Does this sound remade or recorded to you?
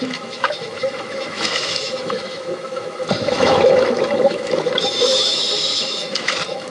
remade